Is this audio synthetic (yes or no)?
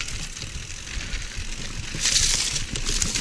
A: no